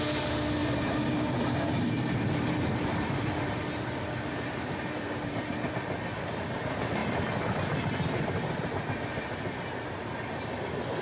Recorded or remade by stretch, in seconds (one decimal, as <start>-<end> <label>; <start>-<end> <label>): 0.0-0.6 recorded; 0.6-5.7 remade; 5.7-11.0 recorded